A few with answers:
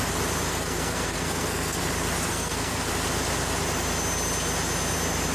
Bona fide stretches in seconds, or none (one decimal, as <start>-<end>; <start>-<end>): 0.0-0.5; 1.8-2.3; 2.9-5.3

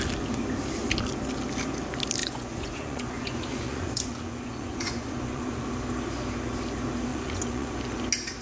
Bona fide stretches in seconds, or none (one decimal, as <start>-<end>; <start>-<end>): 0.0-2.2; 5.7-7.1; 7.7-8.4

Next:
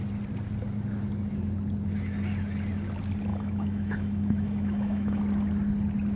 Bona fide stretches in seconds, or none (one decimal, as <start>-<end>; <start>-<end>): 0.0-3.3; 5.2-6.2

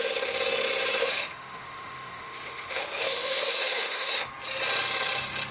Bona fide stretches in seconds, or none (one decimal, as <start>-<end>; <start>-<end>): 0.0-1.0; 4.3-5.5

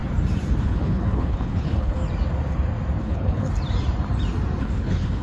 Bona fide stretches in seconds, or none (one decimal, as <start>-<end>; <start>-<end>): 0.0-0.6; 2.0-3.0; 3.5-4.6

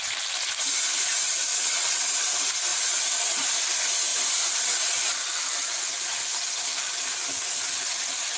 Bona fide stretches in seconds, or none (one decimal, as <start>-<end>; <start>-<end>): 0.0-1.5; 2.1-8.4